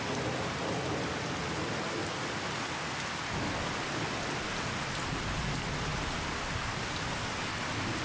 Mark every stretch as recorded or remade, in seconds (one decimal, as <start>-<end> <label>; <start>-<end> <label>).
0.0-2.0 recorded; 2.0-4.0 remade; 4.0-8.0 recorded